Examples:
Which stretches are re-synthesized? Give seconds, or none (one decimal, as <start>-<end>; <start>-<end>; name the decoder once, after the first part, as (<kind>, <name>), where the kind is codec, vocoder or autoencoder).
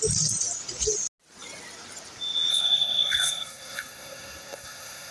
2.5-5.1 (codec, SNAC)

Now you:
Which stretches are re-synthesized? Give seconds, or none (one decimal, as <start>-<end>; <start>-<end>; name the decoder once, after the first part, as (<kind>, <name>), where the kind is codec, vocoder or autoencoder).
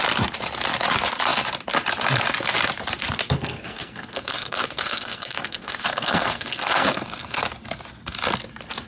3.2-7.4 (codec, SNAC)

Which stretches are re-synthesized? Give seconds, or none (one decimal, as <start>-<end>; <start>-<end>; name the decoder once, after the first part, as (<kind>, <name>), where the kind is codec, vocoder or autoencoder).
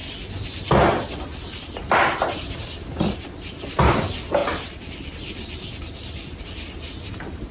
none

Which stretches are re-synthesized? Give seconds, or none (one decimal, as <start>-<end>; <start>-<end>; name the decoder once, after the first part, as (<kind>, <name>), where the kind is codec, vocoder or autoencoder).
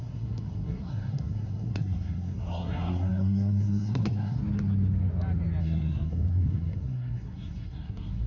0.0-4.4 (codec, SNAC); 5.6-8.3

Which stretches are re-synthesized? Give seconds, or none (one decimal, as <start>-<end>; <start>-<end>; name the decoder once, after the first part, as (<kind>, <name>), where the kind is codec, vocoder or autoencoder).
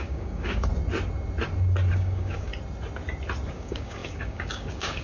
0.0-0.7 (codec, DAC); 1.9-2.5; 3.5-5.0